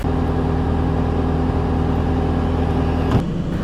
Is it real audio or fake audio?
real